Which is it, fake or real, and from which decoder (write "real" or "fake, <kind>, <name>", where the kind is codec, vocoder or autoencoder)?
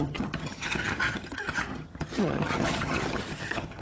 fake, vocoder, HiFi-GAN